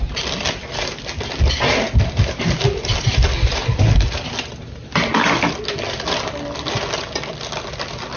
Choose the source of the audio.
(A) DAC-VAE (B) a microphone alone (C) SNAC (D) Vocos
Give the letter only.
B